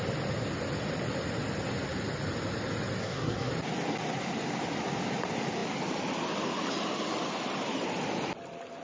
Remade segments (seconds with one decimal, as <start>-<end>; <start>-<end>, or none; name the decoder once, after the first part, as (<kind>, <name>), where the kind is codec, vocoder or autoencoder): 3.0-3.5 (codec, SNAC)